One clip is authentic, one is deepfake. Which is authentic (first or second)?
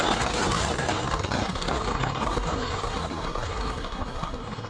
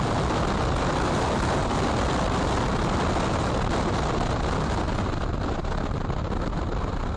second